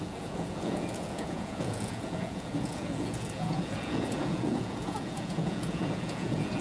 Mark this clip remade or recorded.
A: remade